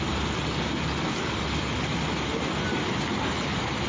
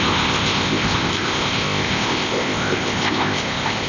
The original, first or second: first